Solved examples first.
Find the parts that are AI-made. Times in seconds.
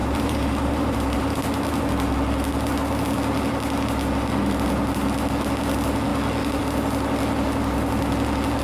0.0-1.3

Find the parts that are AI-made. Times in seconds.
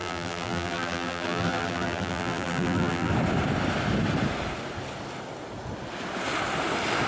0.0-3.1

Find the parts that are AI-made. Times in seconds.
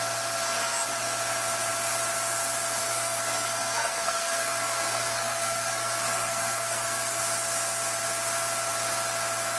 2.8-7.2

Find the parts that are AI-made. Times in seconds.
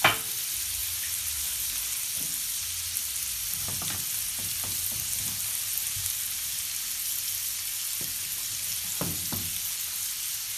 0.8-2.1